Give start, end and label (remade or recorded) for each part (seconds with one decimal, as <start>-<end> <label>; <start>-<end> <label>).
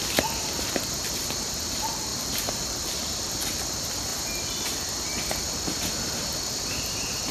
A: 0.0-2.1 recorded; 2.1-3.0 remade; 3.0-7.3 recorded